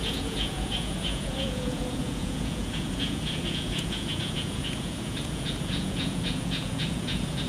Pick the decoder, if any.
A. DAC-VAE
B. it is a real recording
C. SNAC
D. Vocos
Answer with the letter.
D